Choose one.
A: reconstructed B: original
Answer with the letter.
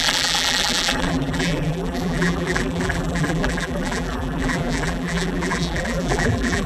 A